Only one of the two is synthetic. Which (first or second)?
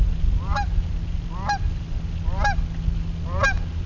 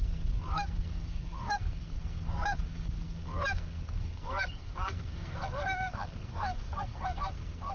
second